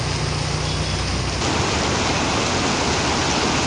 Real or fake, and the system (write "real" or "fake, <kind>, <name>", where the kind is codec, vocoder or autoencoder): real